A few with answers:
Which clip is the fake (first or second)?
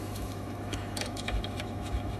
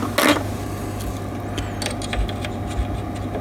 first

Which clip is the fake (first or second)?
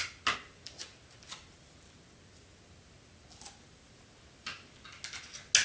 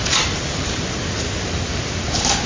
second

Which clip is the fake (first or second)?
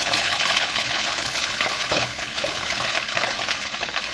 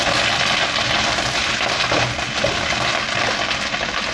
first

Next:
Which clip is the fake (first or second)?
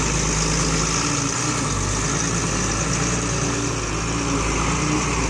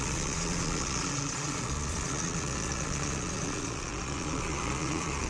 second